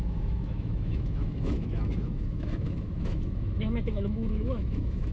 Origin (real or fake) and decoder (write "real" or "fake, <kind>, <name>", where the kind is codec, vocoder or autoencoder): fake, autoencoder, DAC-VAE